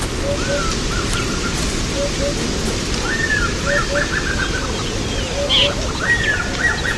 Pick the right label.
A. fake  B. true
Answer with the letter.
B